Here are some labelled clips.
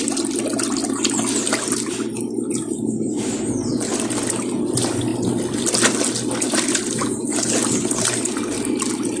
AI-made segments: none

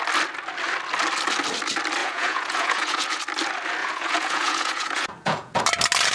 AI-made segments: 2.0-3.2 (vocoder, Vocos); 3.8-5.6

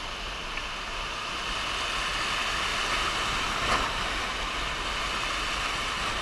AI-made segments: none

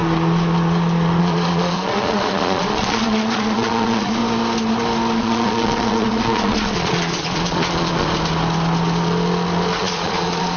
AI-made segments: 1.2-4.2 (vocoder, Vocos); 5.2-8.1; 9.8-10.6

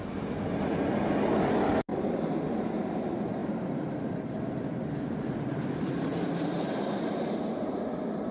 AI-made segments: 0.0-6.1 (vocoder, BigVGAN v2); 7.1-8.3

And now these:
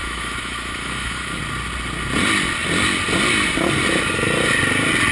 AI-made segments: 0.0-1.4 (autoencoder, DAC-VAE)